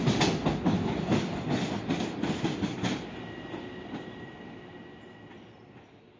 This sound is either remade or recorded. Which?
recorded